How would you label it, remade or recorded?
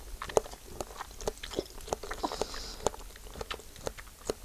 recorded